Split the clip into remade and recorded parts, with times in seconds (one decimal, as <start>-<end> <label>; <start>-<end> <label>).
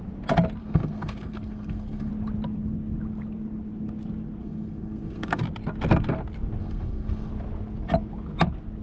0.0-0.6 recorded; 0.6-2.1 remade; 2.1-4.4 recorded; 4.4-5.4 remade; 5.4-6.6 recorded; 6.6-7.3 remade; 7.3-8.8 recorded